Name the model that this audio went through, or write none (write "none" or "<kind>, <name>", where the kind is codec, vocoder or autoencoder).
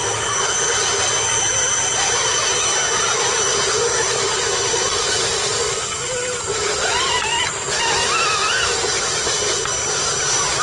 none